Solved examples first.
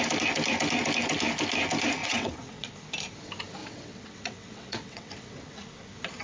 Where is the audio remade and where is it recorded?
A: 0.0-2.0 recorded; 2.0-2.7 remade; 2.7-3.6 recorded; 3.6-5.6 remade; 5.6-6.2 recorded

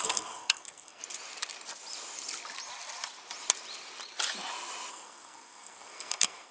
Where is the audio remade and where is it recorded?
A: 0.0-1.0 remade; 1.0-4.9 recorded; 4.9-6.5 remade